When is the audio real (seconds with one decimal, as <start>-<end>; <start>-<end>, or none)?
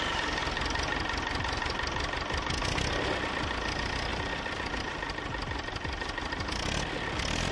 0.0-4.1; 6.3-7.5